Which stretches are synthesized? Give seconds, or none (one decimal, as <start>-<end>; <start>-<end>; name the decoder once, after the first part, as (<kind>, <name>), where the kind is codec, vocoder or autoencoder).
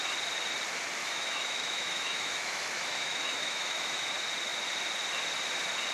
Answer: 1.0-4.1 (autoencoder, DAC-VAE)